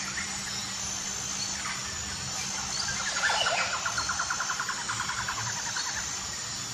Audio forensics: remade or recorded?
recorded